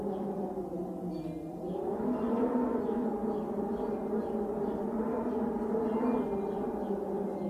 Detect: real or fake real